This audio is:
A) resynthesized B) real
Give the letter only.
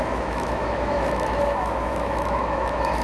A